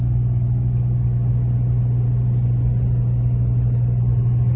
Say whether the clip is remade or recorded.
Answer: recorded